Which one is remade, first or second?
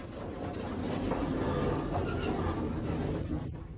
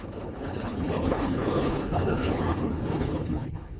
second